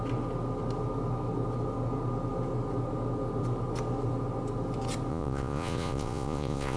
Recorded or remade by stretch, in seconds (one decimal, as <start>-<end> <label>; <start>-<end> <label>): 0.0-5.1 recorded; 5.1-6.8 remade